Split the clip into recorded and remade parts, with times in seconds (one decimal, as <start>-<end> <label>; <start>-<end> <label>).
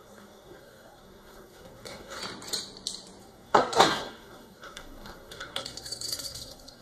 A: 0.0-2.2 remade; 2.2-3.2 recorded; 3.2-6.8 remade